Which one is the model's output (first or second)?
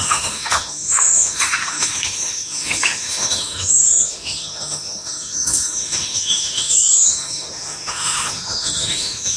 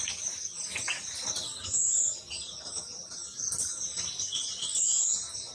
first